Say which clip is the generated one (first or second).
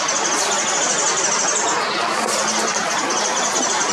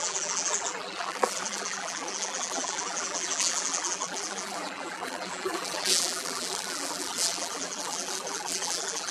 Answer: second